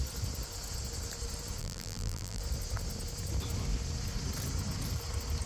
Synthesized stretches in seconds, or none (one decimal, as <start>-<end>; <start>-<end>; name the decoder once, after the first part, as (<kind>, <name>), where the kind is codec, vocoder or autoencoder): 1.6-2.4 (vocoder, BigVGAN v2)

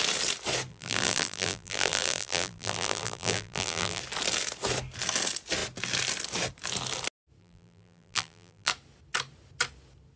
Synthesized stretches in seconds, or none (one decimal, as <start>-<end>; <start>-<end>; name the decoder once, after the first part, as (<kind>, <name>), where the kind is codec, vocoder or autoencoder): 0.7-4.0 (vocoder, BigVGAN v2); 7.4-8.7